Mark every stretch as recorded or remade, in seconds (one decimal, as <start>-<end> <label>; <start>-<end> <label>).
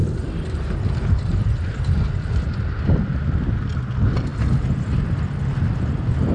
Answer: 0.0-6.3 recorded